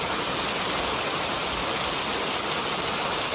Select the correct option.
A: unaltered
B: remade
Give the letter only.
A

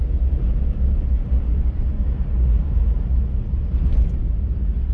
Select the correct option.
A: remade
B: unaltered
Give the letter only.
B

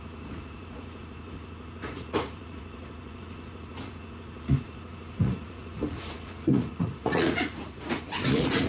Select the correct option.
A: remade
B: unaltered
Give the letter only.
A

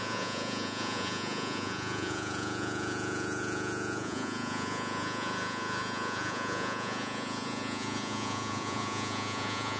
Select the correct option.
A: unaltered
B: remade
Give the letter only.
B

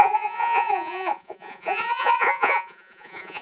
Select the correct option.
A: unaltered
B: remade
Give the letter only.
B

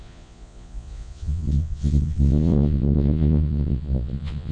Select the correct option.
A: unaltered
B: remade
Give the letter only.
B